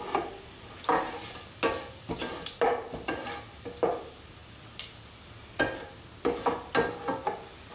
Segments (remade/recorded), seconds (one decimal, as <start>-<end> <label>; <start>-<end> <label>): 0.0-7.7 recorded